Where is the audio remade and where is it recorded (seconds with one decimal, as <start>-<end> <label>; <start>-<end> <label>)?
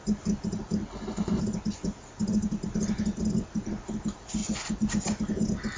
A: 0.0-0.9 recorded; 0.9-1.4 remade; 1.4-5.8 recorded